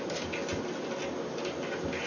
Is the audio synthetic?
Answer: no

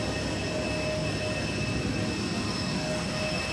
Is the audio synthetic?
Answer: no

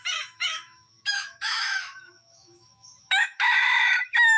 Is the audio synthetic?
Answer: yes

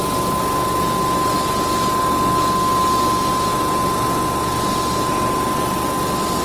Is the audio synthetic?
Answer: no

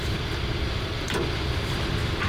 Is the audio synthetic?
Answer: yes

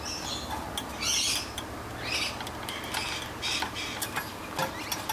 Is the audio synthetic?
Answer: no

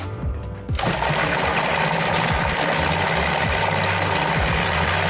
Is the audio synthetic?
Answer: no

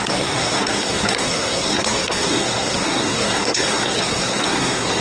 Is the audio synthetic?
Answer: yes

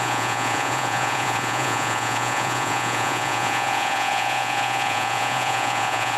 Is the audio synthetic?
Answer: yes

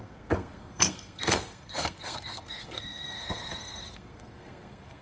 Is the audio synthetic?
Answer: yes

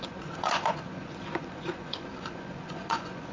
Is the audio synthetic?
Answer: yes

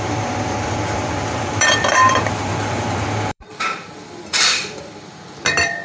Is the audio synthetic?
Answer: yes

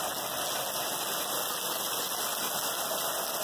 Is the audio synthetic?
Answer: no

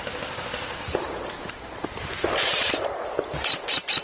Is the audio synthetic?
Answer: no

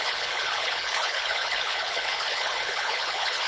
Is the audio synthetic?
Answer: yes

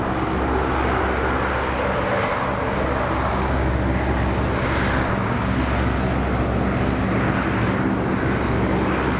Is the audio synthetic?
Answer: no